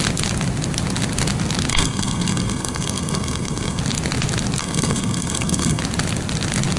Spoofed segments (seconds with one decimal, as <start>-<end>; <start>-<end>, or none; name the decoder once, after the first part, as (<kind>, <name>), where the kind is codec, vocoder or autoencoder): 1.7-3.8 (codec, SNAC); 4.6-5.8